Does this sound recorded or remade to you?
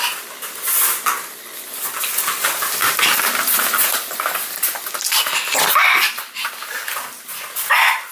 recorded